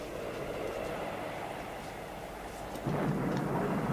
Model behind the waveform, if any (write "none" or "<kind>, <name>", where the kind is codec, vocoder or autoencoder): none